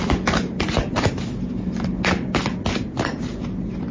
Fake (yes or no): no